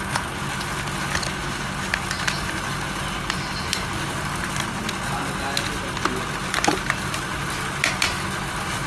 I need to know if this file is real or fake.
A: real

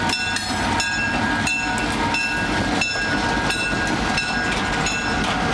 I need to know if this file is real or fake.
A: real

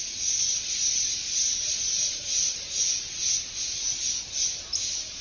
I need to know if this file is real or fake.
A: real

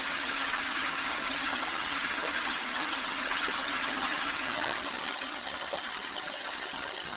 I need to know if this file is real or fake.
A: fake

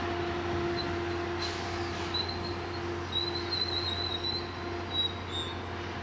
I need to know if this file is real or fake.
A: real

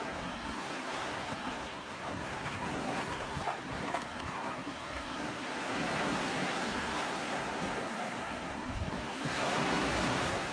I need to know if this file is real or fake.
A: fake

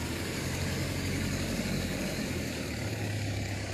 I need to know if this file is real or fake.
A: fake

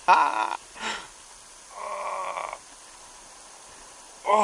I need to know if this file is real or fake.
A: real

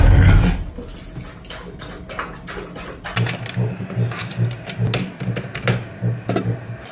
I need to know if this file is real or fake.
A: real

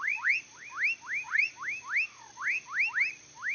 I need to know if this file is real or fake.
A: real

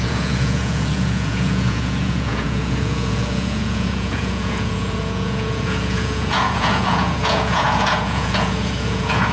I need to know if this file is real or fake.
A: fake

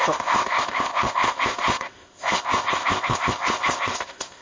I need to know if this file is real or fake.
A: fake